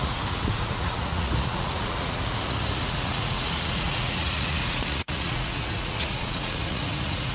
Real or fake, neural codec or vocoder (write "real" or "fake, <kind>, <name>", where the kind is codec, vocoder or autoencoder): fake, vocoder, Vocos